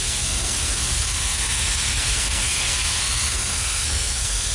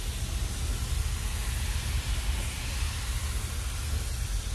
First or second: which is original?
second